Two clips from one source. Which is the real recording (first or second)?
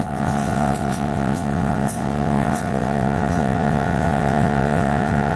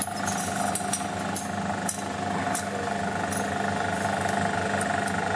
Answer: second